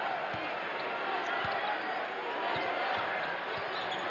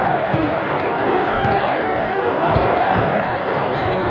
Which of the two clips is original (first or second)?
first